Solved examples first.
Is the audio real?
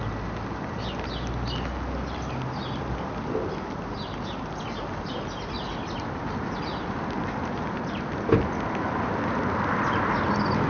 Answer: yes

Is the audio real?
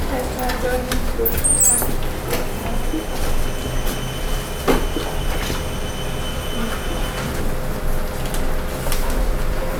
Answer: yes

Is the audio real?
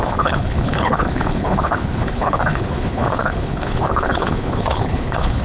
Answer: no